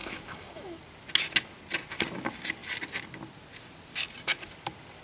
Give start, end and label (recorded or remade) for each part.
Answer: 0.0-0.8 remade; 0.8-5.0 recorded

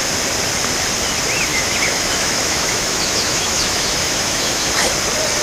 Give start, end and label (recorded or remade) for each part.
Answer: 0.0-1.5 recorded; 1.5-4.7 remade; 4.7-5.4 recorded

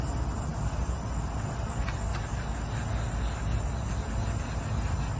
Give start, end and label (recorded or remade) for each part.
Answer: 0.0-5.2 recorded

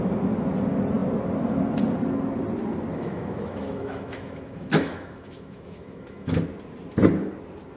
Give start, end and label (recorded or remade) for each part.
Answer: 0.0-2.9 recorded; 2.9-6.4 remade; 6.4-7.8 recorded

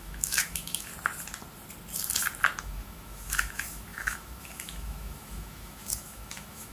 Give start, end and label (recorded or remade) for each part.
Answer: 0.0-0.9 remade; 0.9-2.6 recorded; 2.6-6.7 remade

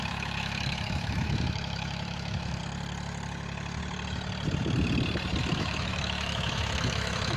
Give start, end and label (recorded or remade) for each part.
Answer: 0.0-2.6 remade; 2.6-5.4 recorded; 5.4-7.4 remade

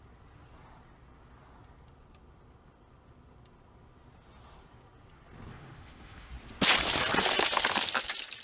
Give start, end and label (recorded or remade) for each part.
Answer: 0.0-5.5 recorded; 5.5-6.3 remade; 6.3-8.4 recorded